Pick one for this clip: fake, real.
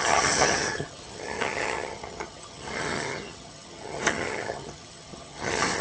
fake